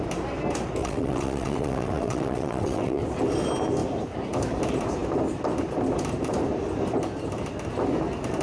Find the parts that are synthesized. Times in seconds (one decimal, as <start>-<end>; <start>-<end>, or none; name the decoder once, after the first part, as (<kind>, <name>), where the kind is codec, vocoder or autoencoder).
0.8-3.0 (vocoder, WaveNeXt)